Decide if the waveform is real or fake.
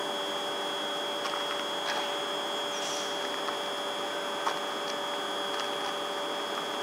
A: real